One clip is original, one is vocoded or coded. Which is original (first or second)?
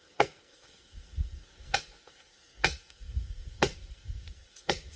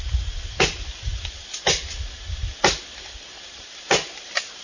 second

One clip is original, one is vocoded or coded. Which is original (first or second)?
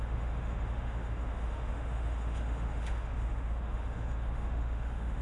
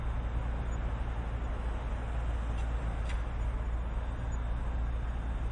second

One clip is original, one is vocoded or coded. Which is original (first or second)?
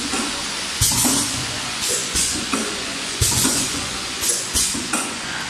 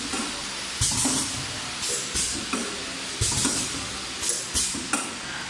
second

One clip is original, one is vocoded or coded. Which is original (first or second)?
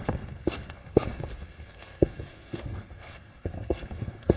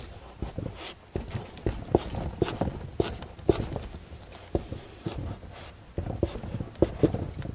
second